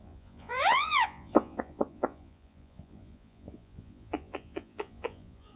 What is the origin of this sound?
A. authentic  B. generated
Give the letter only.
B